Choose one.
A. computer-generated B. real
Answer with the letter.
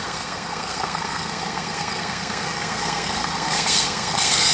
A